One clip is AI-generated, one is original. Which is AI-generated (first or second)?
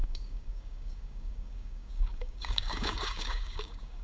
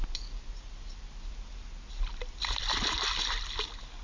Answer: first